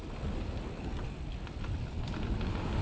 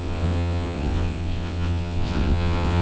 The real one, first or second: first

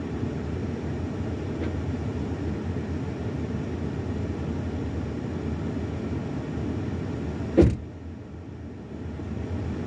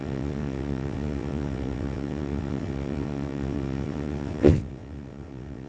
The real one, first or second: first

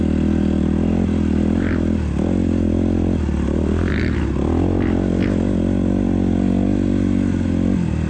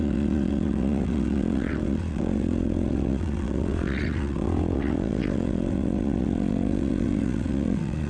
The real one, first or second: first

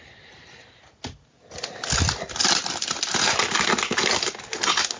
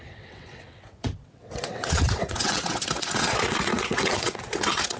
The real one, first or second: first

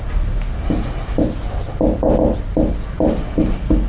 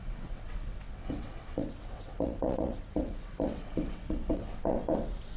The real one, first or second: first